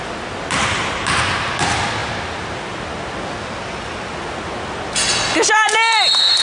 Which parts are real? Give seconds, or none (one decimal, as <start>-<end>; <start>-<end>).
0.0-6.4